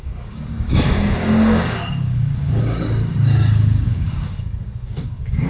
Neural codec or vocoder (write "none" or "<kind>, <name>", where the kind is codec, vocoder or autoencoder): codec, DAC